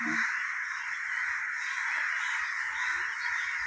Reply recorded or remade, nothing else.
recorded